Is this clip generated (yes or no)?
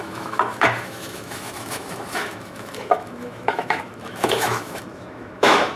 yes